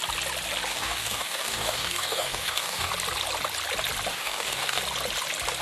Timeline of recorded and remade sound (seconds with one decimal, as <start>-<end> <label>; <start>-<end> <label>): 0.0-0.7 recorded; 0.7-2.9 remade; 2.9-4.1 recorded; 4.1-4.8 remade; 4.8-5.6 recorded